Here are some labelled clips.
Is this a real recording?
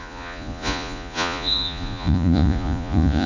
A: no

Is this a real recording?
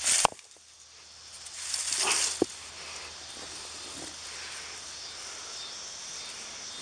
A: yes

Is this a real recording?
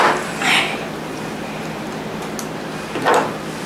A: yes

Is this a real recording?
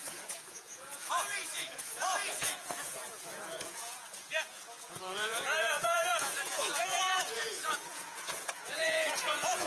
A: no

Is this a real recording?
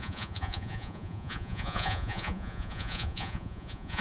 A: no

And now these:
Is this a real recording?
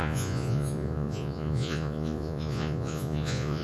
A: no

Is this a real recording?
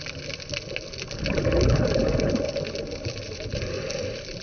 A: yes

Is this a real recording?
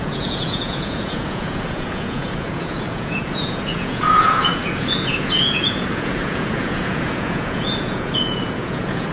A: no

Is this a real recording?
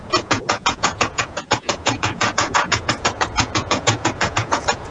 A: no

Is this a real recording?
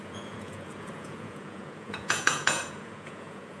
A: no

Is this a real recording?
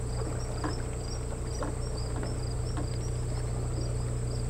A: yes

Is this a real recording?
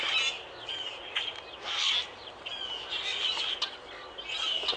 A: yes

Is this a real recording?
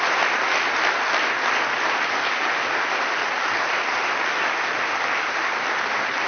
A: yes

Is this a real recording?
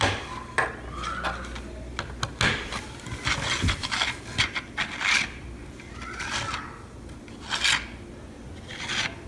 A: yes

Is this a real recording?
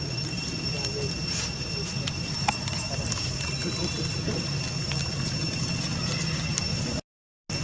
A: yes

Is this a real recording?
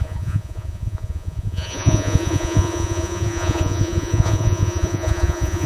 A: no